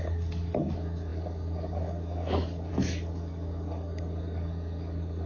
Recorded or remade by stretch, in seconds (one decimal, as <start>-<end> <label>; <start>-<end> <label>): 0.0-5.3 remade